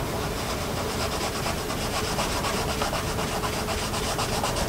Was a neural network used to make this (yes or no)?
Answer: no